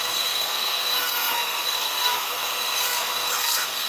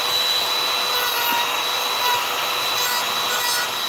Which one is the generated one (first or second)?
first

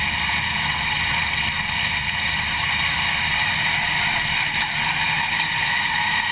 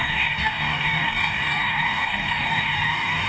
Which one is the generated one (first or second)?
second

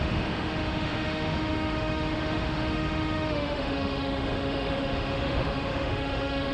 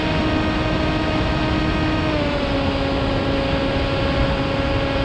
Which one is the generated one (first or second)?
first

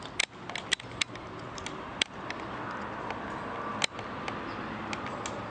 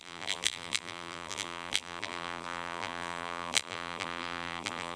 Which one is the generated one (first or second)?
second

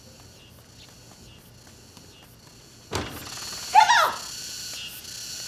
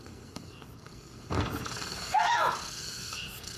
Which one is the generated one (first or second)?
second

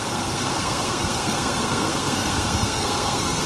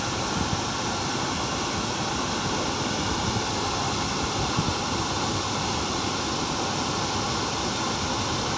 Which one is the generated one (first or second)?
first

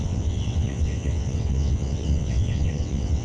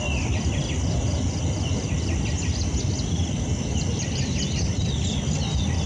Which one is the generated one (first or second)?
first